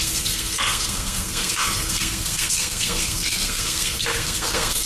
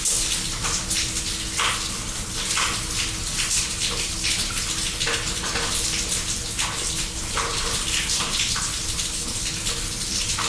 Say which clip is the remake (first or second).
first